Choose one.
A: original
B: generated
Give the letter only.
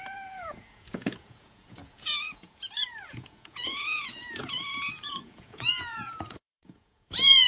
B